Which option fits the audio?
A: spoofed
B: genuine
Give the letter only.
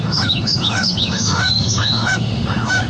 A